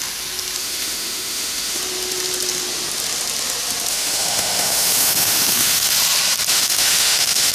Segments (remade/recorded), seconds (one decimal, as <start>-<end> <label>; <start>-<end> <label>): 0.0-0.6 recorded; 0.6-1.8 remade; 1.8-3.9 recorded; 3.9-5.9 remade; 5.9-6.5 recorded; 6.5-7.5 remade